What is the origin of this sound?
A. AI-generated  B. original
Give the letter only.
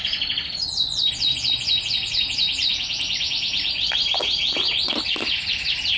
A